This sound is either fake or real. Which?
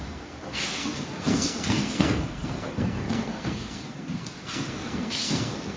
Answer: fake